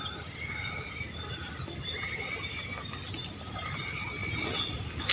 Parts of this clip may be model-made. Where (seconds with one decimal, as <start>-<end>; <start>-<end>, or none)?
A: none